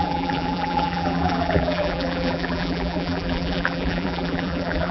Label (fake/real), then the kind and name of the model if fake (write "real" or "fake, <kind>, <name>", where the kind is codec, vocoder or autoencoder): fake, vocoder, BigVGAN v2